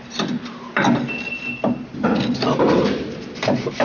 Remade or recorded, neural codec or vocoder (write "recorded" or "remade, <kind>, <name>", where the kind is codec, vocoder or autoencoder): remade, vocoder, BigVGAN v2